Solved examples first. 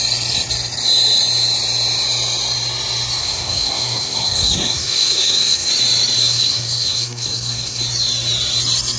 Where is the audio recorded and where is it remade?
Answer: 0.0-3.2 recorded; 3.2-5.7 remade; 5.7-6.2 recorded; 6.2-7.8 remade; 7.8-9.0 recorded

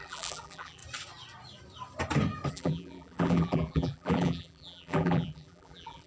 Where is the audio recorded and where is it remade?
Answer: 0.0-0.8 remade; 0.8-2.5 recorded; 2.5-6.1 remade

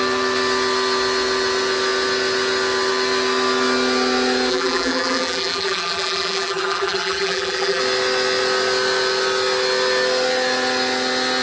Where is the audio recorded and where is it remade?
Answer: 0.0-4.5 recorded; 4.5-7.8 remade; 7.8-11.4 recorded

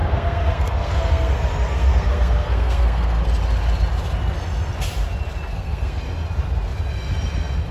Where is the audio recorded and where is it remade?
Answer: 0.0-3.2 remade; 3.2-5.5 recorded; 5.5-6.0 remade; 6.0-7.7 recorded

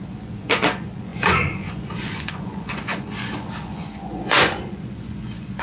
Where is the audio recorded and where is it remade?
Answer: 0.0-5.6 remade

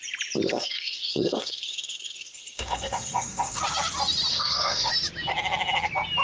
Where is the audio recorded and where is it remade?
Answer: 0.0-0.5 recorded; 0.5-3.6 remade; 3.6-4.3 recorded; 4.3-4.9 remade; 4.9-6.2 recorded

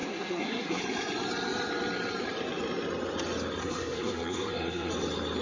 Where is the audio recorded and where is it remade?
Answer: 0.0-0.8 remade; 0.8-3.6 recorded; 3.6-4.9 remade; 4.9-5.4 recorded